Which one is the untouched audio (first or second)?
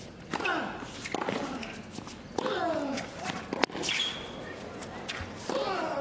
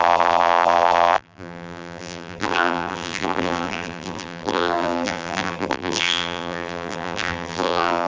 first